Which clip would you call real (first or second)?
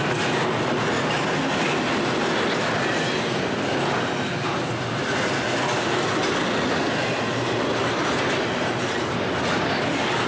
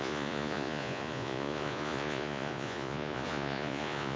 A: first